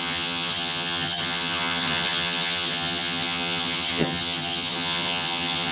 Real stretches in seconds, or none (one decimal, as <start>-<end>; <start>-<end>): none